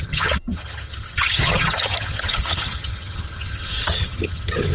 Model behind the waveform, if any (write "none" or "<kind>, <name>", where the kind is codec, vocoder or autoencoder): vocoder, HiFi-GAN